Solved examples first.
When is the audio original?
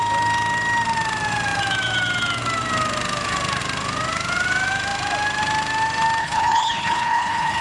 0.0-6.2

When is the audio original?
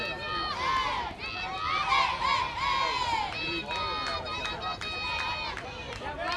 0.0-6.4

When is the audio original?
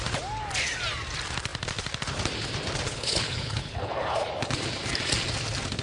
0.0-2.9; 4.3-5.8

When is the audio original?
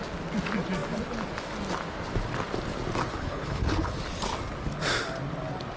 0.0-3.1; 3.9-5.8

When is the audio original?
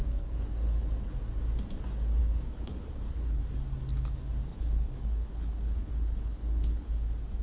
1.1-2.2; 3.4-4.5; 6.9-7.4